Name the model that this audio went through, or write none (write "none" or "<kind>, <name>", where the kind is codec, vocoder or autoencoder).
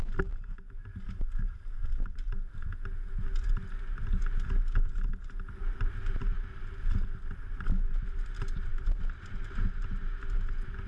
none